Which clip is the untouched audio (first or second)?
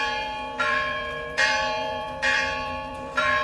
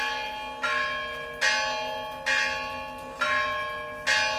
second